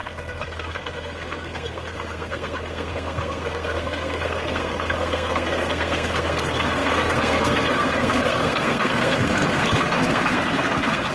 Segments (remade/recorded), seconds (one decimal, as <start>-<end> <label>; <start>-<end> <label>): 0.0-11.1 remade